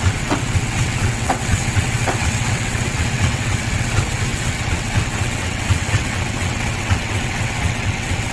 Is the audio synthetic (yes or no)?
yes